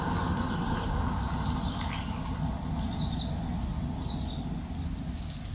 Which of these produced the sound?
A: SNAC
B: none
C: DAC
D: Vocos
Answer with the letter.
B